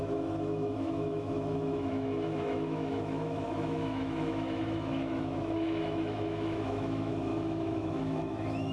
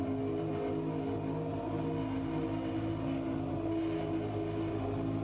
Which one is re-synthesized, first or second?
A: first